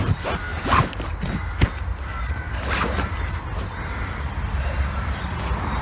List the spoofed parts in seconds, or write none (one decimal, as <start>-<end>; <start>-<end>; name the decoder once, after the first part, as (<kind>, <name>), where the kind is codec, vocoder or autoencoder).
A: none